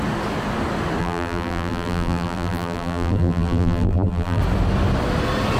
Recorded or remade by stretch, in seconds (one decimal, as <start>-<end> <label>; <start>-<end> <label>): 0.0-1.0 recorded; 1.0-4.4 remade; 4.4-5.6 recorded